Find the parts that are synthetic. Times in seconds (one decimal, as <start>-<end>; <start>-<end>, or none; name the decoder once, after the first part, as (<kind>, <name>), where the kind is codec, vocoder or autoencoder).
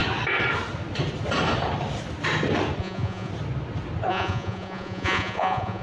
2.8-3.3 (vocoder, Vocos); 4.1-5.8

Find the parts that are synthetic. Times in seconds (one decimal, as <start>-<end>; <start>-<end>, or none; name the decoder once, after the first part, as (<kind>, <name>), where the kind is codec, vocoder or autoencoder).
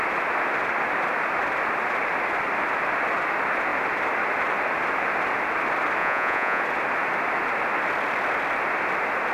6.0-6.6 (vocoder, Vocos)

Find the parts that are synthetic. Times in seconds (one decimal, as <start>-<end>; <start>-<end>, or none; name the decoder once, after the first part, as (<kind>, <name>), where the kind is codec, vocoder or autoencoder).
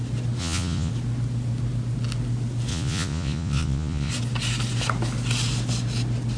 0.4-0.9 (vocoder, Vocos); 2.7-4.1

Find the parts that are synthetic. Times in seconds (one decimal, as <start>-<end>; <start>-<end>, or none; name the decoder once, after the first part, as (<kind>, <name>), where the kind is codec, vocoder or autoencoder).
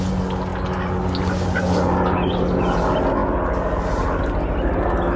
none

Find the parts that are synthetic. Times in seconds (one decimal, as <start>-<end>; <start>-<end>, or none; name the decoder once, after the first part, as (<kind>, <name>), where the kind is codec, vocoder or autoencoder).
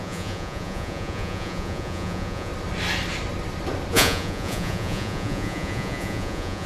0.0-2.5 (vocoder, Vocos); 3.9-6.7